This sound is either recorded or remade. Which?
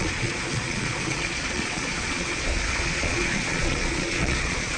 remade